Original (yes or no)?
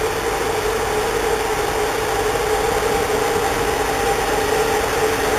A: yes